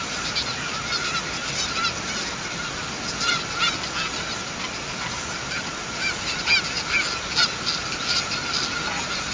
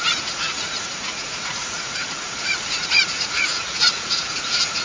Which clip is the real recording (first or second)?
first